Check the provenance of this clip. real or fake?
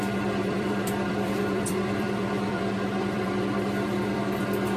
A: fake